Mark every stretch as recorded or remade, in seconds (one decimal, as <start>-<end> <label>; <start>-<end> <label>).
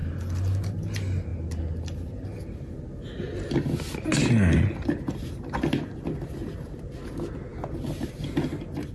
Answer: 0.0-0.8 remade; 0.8-8.9 recorded